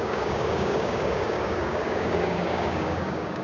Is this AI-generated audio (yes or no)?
yes